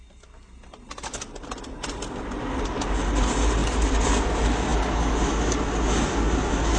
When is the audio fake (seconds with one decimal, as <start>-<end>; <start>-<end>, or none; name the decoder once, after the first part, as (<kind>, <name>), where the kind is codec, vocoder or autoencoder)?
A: none